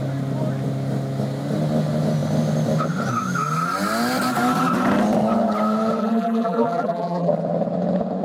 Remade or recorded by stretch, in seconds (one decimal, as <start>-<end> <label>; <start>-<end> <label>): 0.0-6.0 recorded; 6.0-7.3 remade; 7.3-8.2 recorded